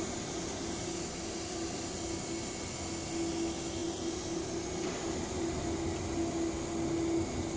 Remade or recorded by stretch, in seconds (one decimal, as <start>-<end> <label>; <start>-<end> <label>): 0.0-7.6 recorded